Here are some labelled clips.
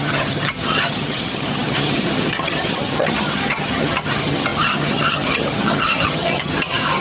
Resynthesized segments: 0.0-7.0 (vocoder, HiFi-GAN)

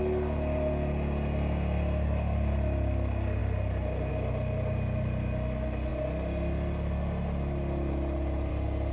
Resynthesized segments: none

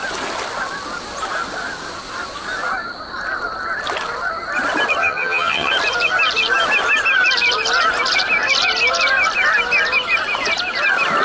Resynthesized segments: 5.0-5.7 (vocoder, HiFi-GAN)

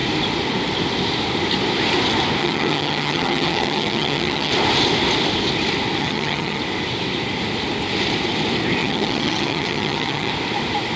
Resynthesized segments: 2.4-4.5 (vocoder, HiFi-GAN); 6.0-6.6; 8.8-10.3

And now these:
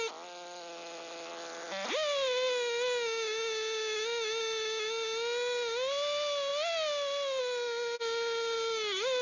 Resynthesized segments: none

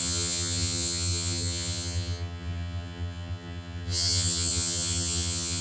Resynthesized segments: 0.0-5.6 (vocoder, HiFi-GAN)

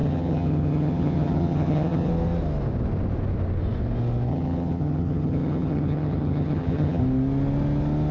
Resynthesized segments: 0.0-2.1 (vocoder, HiFi-GAN); 4.3-7.0